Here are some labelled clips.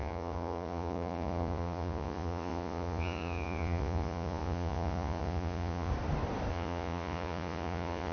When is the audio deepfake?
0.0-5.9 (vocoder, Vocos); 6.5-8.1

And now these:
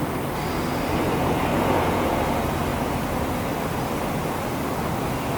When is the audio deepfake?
1.5-2.2 (vocoder, Vocos)

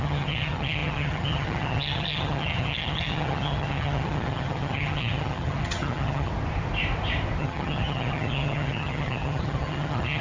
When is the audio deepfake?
0.0-6.3 (vocoder, HiFi-GAN); 7.4-10.2

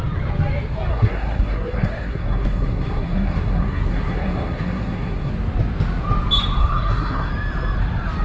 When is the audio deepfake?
0.9-5.3 (codec, SNAC); 6.6-7.3

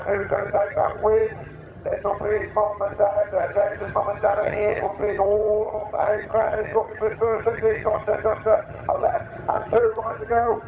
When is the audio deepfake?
0.0-10.7 (vocoder, HiFi-GAN)